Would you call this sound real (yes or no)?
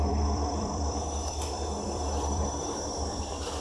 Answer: no